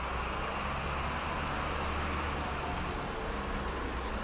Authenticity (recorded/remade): recorded